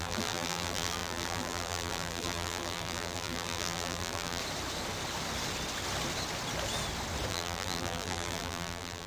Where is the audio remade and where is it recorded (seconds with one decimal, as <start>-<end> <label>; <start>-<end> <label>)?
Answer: 0.0-4.4 remade; 4.4-7.3 recorded; 7.3-9.1 remade